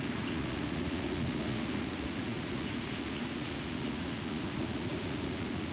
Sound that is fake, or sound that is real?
fake